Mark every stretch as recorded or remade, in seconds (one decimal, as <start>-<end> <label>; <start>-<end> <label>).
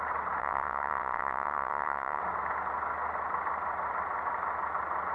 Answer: 0.0-0.4 recorded; 0.4-2.2 remade; 2.2-5.1 recorded